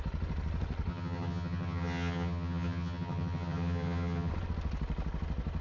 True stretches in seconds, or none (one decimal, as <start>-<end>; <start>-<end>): 0.0-0.9; 4.3-5.6